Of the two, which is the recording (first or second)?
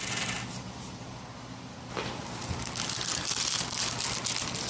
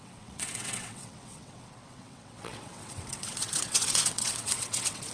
first